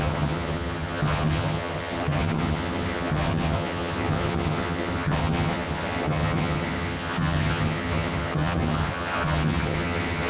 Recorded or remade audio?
remade